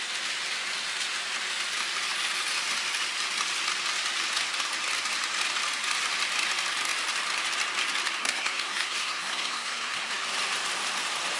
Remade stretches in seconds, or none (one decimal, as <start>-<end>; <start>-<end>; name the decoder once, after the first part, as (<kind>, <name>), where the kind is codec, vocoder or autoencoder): 8.2-10.1 (codec, SNAC)